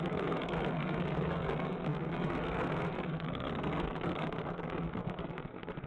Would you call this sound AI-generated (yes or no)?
yes